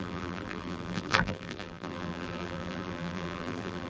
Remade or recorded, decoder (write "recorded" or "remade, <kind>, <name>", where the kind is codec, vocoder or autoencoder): remade, vocoder, BigVGAN v2